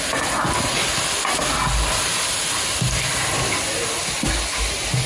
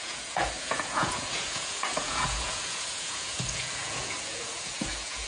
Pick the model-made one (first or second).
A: second